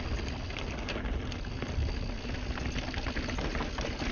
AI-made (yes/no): no